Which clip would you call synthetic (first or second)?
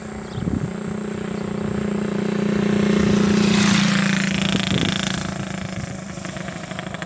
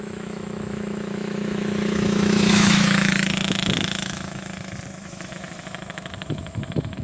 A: second